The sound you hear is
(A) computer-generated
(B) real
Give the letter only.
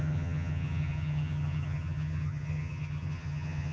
A